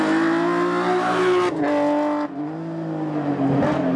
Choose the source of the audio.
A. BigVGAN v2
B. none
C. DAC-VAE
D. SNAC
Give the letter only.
B